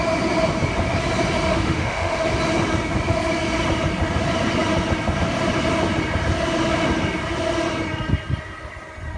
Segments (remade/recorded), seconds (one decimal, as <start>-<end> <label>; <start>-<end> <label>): 0.0-1.5 recorded; 1.5-2.3 remade; 2.3-9.2 recorded